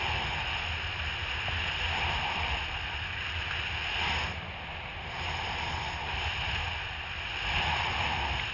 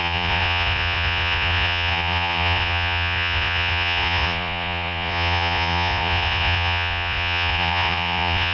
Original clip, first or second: first